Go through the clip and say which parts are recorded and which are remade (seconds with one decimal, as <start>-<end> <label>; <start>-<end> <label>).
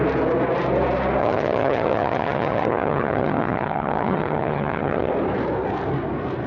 0.0-1.2 recorded; 1.2-5.1 remade; 5.1-6.5 recorded